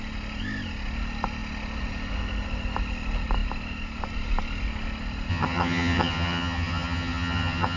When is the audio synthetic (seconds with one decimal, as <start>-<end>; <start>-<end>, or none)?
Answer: 5.3-7.8